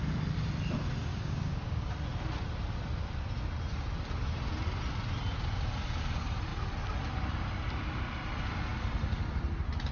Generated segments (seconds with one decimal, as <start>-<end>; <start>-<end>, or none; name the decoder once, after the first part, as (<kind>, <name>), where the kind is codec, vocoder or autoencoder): 1.1-1.9 (codec, DAC)